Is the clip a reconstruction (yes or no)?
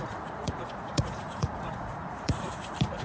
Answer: yes